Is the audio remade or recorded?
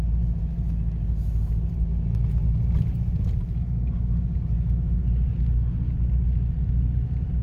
recorded